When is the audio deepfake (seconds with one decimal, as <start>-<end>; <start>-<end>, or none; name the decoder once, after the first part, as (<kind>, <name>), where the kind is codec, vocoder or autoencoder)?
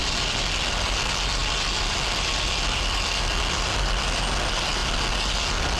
none